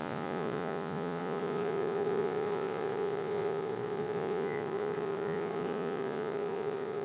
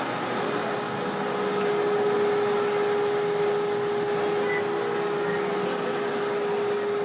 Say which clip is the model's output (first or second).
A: first